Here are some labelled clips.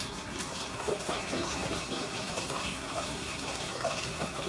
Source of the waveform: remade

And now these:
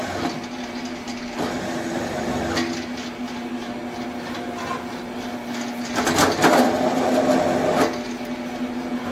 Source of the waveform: recorded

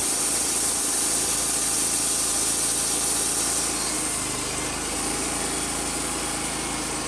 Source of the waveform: recorded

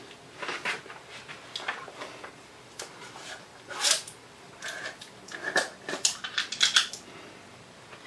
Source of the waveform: recorded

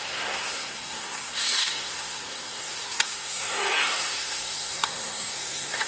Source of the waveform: remade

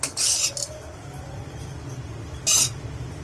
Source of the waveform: recorded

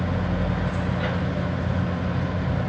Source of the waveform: recorded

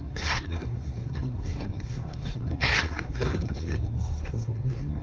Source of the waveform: remade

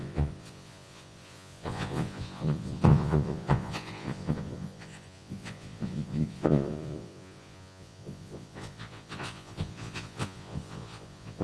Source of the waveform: remade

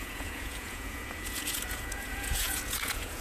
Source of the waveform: remade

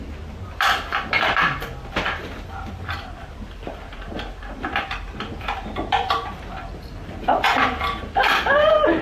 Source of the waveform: remade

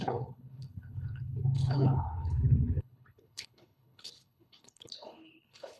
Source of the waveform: remade